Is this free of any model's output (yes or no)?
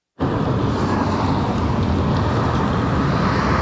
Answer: yes